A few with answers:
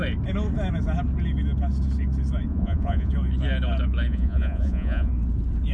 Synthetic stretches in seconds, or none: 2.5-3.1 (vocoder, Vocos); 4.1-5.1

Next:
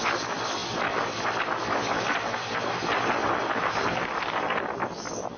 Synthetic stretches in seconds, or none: none

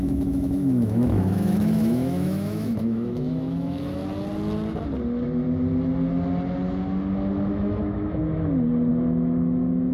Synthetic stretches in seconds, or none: 0.0-4.0 (autoencoder, DAC-VAE); 7.5-8.2; 8.9-9.9

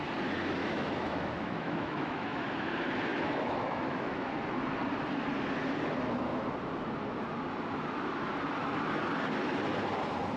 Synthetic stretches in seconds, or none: 0.6-2.7 (autoencoder, DAC-VAE); 3.1-4.3

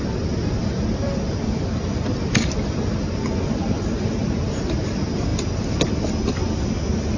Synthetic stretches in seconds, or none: 0.6-3.7 (vocoder, BigVGAN v2)

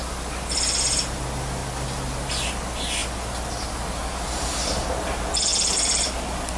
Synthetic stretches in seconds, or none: none